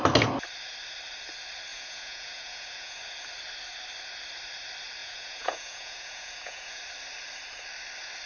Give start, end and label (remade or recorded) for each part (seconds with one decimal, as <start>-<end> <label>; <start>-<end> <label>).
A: 0.0-1.7 recorded; 1.7-3.0 remade; 3.0-5.0 recorded; 5.0-6.8 remade; 6.8-8.3 recorded